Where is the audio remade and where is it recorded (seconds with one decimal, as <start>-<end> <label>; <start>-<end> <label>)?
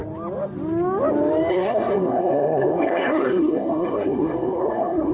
0.0-1.5 recorded; 1.5-5.1 remade